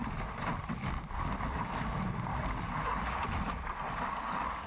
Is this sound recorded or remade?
recorded